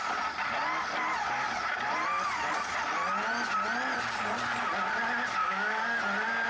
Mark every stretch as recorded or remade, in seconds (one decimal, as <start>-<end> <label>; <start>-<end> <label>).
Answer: 0.0-5.4 recorded; 5.4-6.0 remade; 6.0-6.5 recorded